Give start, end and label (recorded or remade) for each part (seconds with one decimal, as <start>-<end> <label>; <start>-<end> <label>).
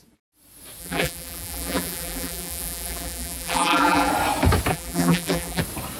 0.0-0.8 recorded; 0.8-4.1 remade; 4.1-4.7 recorded; 4.7-5.6 remade; 5.6-6.0 recorded